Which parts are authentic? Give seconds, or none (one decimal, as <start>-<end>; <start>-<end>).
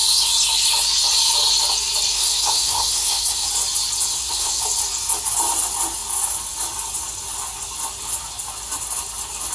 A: 0.0-2.1; 3.5-4.1; 4.6-9.5